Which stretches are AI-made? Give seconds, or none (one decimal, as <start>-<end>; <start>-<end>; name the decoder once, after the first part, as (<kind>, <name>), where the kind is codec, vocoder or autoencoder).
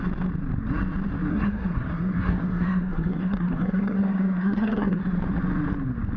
1.3-5.0 (codec, SNAC)